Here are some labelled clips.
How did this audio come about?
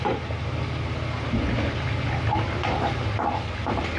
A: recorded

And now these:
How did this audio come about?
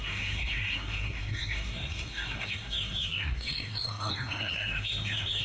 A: remade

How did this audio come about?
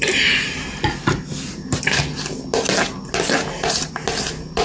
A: recorded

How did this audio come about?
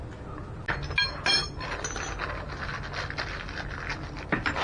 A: recorded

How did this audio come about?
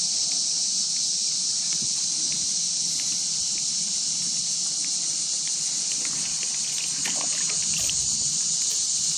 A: remade